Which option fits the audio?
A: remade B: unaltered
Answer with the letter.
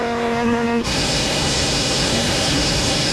A